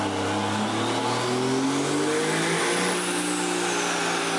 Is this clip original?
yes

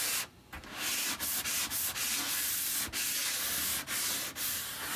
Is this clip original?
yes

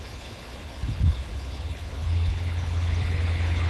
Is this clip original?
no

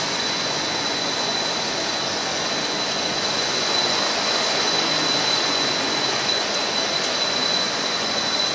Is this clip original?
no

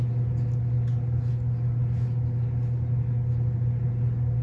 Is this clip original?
yes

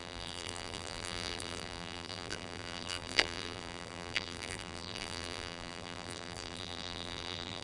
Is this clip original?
no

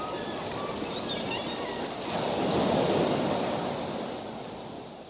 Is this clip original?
yes